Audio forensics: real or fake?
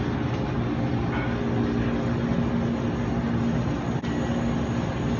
real